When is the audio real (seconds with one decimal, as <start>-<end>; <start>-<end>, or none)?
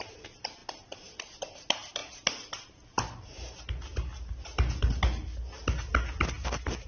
0.0-6.9